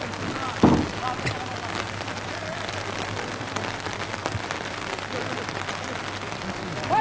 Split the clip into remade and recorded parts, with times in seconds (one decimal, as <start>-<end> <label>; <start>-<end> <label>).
0.0-5.0 remade; 5.0-6.0 recorded; 6.0-7.0 remade